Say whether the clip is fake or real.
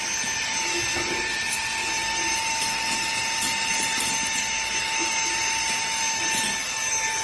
real